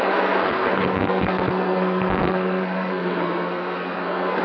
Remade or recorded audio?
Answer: remade